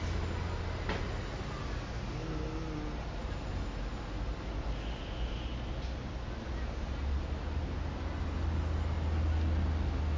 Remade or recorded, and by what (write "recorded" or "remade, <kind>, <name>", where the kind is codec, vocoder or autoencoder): recorded